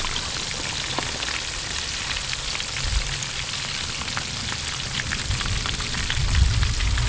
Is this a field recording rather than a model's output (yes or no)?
yes